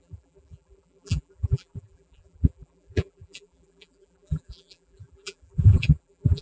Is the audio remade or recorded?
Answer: remade